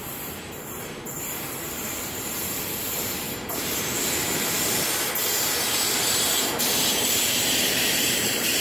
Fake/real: fake